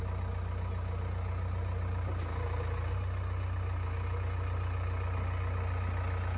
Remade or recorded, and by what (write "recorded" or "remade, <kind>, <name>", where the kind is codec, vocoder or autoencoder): recorded